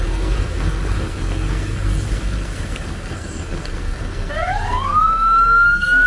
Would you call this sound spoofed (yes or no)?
yes